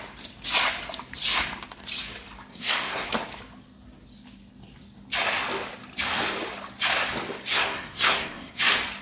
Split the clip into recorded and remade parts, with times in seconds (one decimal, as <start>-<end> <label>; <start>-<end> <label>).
0.0-2.5 recorded; 2.5-3.1 remade; 3.1-7.5 recorded; 7.5-8.6 remade; 8.6-9.0 recorded